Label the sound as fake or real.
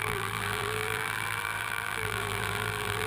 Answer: fake